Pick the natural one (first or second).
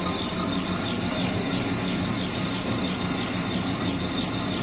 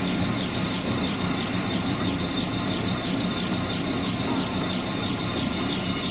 first